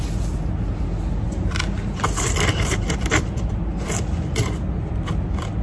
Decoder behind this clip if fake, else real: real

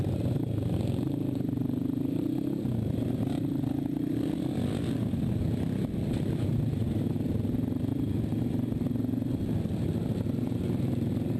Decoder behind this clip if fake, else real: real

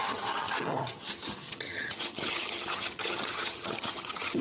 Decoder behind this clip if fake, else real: fake, vocoder, HiFi-GAN